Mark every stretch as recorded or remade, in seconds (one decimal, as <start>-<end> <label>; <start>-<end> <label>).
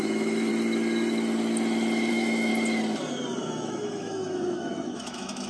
0.0-0.5 remade; 0.5-2.1 recorded; 2.1-2.5 remade; 2.5-3.4 recorded; 3.4-5.5 remade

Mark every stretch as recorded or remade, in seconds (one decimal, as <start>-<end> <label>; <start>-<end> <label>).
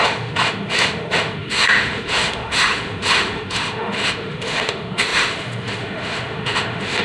0.0-7.0 remade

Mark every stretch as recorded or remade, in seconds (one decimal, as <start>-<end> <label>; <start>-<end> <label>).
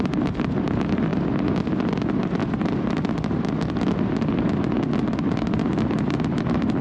0.0-6.8 recorded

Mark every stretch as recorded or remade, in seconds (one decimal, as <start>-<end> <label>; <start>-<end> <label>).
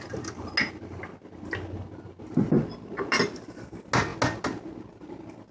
0.0-5.5 recorded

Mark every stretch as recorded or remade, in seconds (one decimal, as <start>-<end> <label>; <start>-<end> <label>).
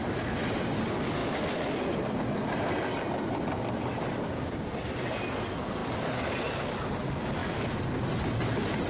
0.0-8.9 recorded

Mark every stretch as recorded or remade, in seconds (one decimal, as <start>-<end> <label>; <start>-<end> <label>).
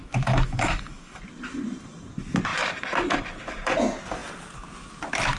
0.0-1.2 remade; 1.2-5.4 recorded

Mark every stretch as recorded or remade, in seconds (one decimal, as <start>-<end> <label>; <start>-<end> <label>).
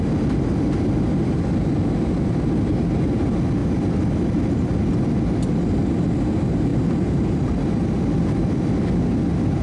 0.0-9.6 recorded